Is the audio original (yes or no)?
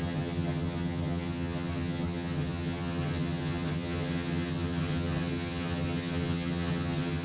no